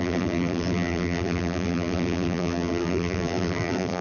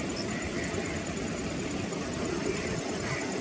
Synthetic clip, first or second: first